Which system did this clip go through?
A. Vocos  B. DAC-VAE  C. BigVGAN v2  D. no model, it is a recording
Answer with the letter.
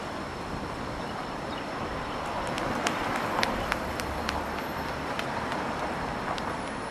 D